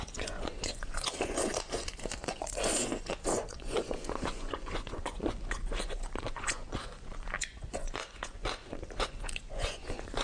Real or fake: fake